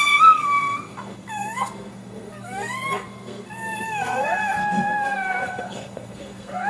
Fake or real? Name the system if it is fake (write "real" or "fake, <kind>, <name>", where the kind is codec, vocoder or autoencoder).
fake, codec, SNAC